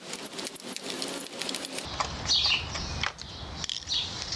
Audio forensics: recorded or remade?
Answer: recorded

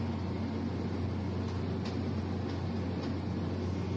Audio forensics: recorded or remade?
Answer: recorded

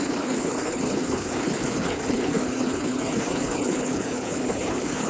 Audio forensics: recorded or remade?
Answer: remade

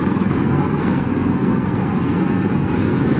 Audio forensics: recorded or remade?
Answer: remade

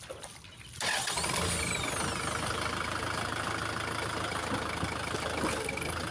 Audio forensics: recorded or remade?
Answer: recorded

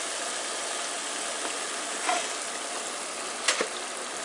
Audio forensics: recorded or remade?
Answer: recorded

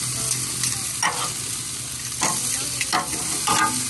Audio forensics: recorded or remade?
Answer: recorded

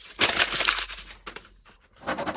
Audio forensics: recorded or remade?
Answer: recorded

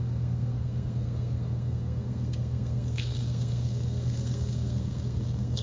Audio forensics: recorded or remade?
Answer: remade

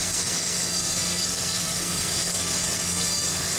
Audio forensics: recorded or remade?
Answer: remade